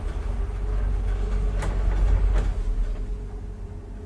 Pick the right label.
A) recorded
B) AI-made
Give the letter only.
A